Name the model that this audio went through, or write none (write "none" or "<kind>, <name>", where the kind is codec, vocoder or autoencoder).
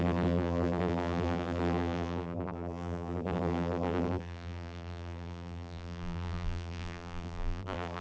vocoder, BigVGAN v2